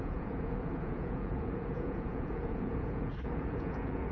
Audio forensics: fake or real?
fake